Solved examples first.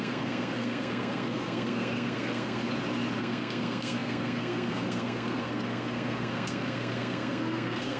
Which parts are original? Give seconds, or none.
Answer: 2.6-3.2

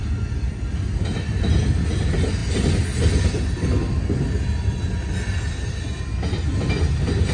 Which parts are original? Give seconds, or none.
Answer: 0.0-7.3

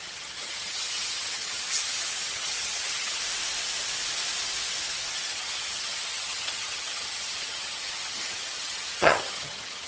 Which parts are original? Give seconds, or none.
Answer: 3.2-5.1

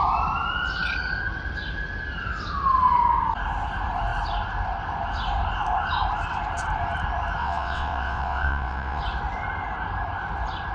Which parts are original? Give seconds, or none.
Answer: 0.0-7.4; 9.0-10.7